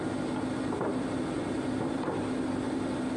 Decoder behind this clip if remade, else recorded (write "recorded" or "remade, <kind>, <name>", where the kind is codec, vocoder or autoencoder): recorded